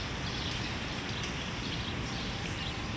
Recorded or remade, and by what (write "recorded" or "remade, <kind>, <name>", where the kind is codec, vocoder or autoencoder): recorded